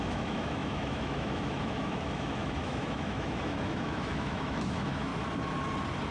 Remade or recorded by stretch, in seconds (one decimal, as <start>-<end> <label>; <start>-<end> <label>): 0.0-5.1 remade; 5.1-6.1 recorded